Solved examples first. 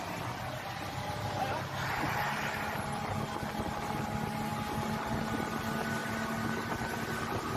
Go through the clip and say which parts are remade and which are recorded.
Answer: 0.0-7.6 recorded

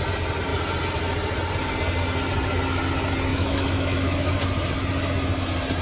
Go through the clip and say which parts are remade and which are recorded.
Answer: 0.0-3.3 recorded; 3.3-4.3 remade; 4.3-5.8 recorded

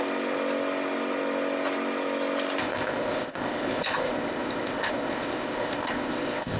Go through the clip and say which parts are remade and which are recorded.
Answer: 0.0-2.6 recorded; 2.6-6.6 remade

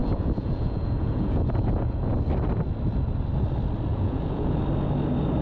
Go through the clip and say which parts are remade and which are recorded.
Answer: 0.0-2.2 remade; 2.2-3.9 recorded; 3.9-4.6 remade; 4.6-5.4 recorded

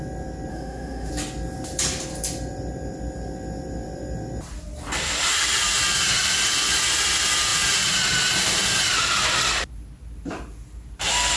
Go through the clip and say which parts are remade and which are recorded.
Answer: 0.0-0.5 recorded; 0.5-1.1 remade; 1.1-11.4 recorded